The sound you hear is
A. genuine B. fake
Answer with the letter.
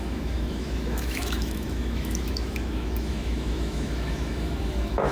B